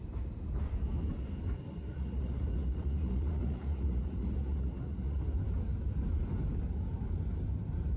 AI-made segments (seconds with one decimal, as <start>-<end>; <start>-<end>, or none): 1.8-5.2